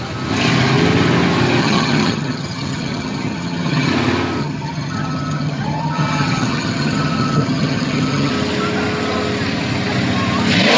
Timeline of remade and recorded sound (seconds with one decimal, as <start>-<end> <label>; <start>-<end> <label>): 0.0-1.6 recorded; 1.6-3.9 remade; 3.9-4.4 recorded; 4.4-8.3 remade; 8.3-10.8 recorded